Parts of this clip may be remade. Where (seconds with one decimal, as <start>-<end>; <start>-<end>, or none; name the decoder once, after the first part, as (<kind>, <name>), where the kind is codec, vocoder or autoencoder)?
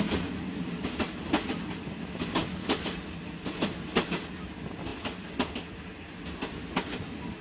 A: none